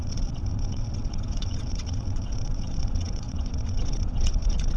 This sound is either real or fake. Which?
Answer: fake